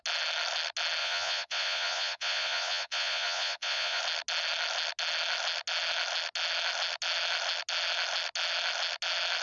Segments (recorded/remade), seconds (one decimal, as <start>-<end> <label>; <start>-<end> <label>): 0.0-1.0 recorded; 1.0-4.0 remade; 4.0-9.4 recorded

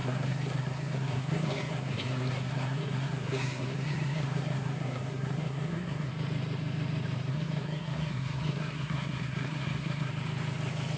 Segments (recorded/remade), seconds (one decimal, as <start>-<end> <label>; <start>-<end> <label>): 0.0-6.1 remade; 6.1-7.3 recorded; 7.3-10.1 remade; 10.1-11.0 recorded

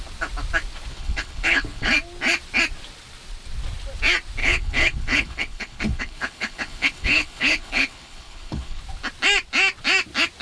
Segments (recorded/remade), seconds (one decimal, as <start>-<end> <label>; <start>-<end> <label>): 0.0-0.9 recorded; 0.9-1.9 remade; 1.9-4.4 recorded; 4.4-8.8 remade; 8.8-10.4 recorded

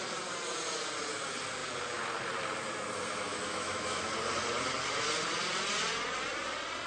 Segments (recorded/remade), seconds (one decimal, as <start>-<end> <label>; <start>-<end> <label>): 0.0-3.3 recorded; 3.3-4.1 remade; 4.1-6.9 recorded